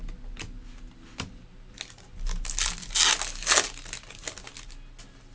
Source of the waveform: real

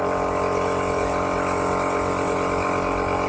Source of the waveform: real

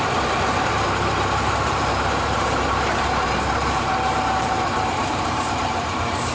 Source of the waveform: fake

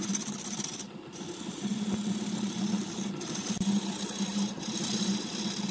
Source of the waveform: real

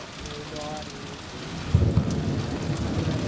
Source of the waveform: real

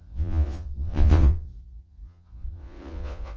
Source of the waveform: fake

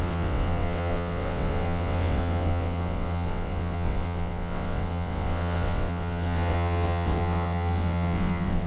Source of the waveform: fake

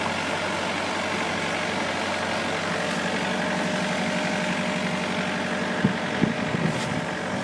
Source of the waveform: real